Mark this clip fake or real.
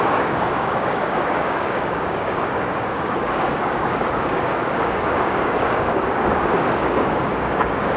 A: fake